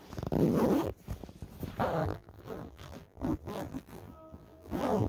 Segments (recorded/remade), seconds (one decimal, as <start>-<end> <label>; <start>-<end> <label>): 0.0-2.0 recorded; 2.0-5.1 remade